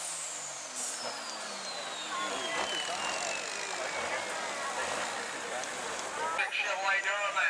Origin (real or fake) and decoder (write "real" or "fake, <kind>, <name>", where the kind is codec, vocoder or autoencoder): real